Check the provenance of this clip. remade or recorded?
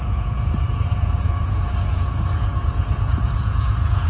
remade